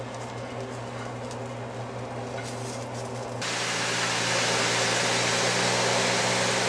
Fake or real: real